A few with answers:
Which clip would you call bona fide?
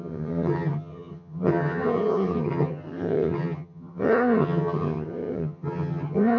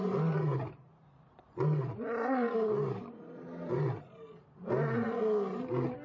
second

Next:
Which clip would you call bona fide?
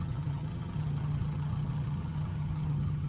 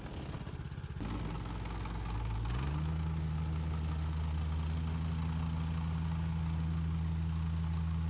second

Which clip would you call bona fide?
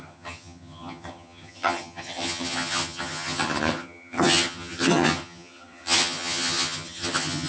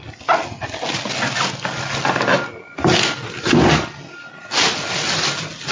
second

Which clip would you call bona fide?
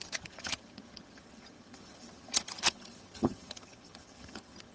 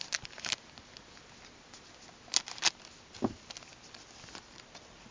second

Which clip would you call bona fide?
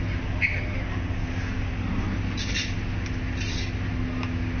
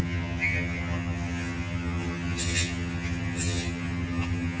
first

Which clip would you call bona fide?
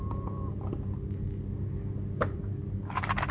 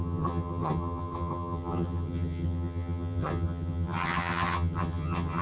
first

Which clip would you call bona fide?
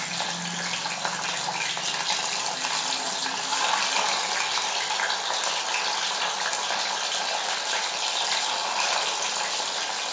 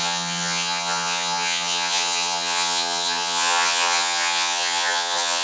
first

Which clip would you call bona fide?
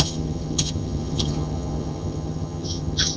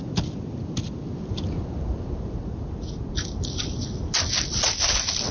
second